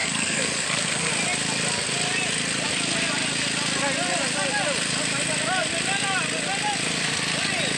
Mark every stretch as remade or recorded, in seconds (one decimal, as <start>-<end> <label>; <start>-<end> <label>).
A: 0.0-1.1 remade; 1.1-7.8 recorded